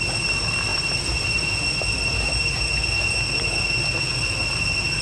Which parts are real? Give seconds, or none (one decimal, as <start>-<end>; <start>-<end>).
0.0-5.0